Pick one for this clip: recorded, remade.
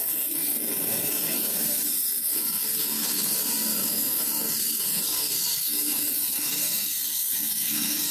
remade